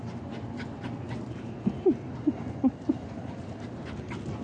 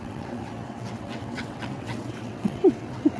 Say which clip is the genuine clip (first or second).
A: first